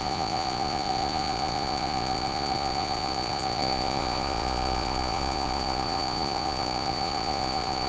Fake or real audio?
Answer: fake